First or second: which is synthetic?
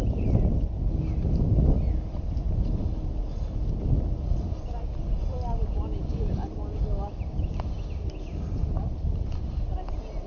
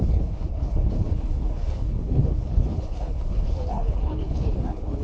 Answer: second